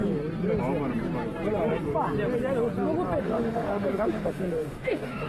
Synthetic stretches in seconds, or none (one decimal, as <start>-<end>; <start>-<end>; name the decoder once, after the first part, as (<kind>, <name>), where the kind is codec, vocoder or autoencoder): 3.2-5.3 (autoencoder, DAC-VAE)